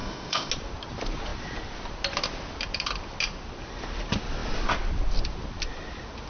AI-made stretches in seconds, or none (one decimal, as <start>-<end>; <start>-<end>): 0.0-0.5